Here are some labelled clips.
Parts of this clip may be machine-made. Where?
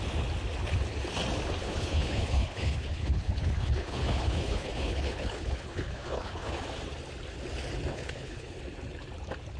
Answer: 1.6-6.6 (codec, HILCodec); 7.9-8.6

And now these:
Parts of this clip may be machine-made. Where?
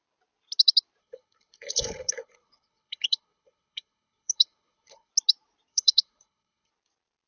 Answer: 1.0-5.1 (codec, HILCodec); 5.7-6.7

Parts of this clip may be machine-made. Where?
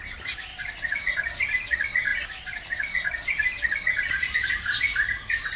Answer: none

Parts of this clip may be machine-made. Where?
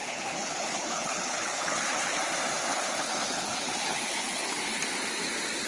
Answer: 0.0-2.2 (codec, HILCodec); 2.7-4.8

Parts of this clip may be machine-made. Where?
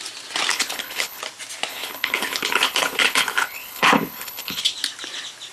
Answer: 0.5-1.2 (codec, HILCodec); 1.7-4.6